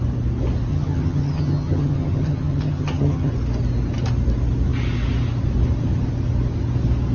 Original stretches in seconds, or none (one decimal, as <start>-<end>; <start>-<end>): 0.0-0.7; 3.3-7.1